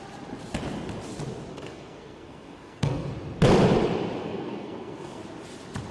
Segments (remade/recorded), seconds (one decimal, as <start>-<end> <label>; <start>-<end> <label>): 0.0-1.5 recorded; 1.5-3.1 remade; 3.1-4.2 recorded; 4.2-5.2 remade; 5.2-5.9 recorded